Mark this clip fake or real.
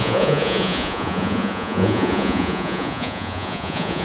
fake